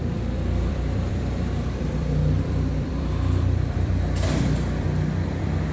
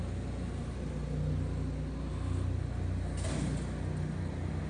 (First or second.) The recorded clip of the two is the second